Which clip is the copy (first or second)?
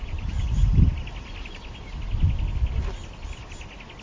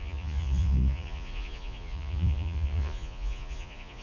second